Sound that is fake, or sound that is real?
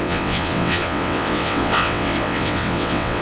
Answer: fake